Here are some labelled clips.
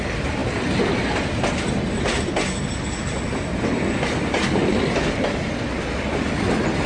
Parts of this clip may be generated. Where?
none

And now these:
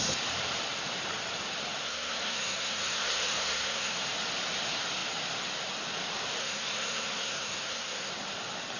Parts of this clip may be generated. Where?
1.8-4.0 (codec, SNAC); 6.4-8.1

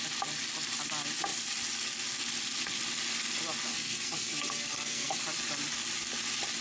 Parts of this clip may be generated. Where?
3.7-5.2 (codec, SNAC)

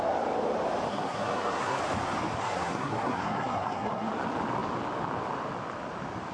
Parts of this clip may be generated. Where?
0.9-1.8 (codec, SNAC); 2.4-4.1

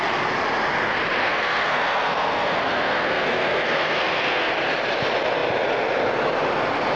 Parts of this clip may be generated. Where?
1.2-4.5 (codec, SNAC)

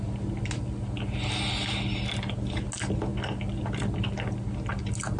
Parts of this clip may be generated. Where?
none